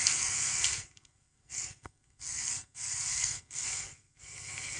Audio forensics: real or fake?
fake